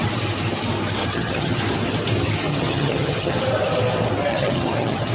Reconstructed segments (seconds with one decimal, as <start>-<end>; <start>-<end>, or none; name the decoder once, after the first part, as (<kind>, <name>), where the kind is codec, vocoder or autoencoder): 1.0-1.6 (vocoder, HiFi-GAN); 2.5-3.4; 4.3-5.1